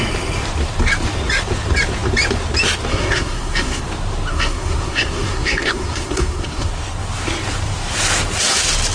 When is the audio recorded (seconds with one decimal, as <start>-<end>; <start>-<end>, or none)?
0.0-2.9; 3.8-4.3; 6.7-8.9